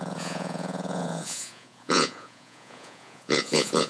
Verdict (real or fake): fake